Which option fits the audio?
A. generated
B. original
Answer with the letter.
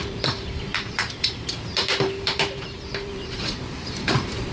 A